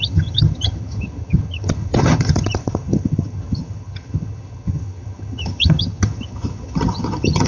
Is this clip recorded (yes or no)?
no